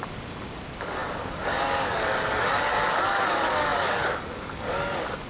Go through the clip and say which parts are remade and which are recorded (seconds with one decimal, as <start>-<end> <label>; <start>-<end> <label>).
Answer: 0.0-5.3 remade